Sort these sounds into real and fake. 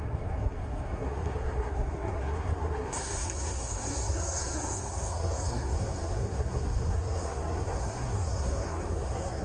fake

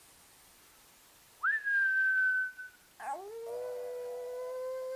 real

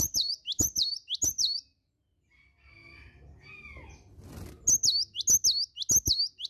real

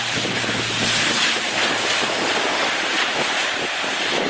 real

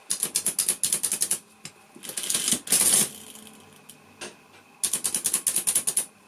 real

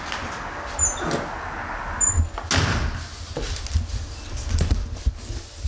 real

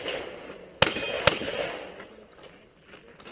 real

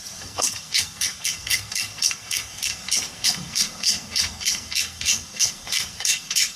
fake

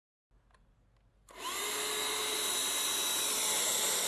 real